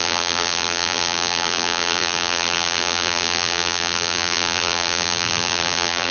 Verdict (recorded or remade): remade